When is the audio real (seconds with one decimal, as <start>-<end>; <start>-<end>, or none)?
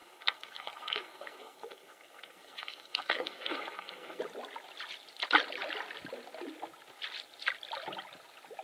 4.2-8.6